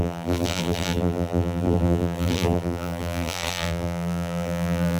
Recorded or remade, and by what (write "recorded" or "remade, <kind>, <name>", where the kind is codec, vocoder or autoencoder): remade, vocoder, BigVGAN v2